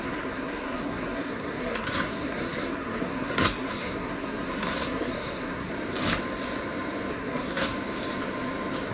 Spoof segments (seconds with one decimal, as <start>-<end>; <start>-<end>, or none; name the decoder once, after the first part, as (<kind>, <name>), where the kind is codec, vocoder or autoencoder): 0.0-5.7 (codec, SNAC); 7.1-7.7

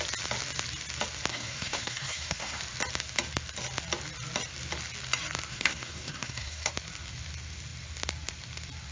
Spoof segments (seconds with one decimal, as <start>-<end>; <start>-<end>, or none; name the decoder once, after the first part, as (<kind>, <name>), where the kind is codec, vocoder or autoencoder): 1.3-2.6 (codec, SNAC); 5.5-6.7

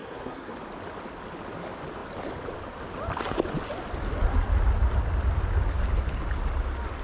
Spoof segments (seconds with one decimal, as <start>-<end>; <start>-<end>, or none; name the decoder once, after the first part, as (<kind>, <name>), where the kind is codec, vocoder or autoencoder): 0.0-0.5 (codec, SNAC)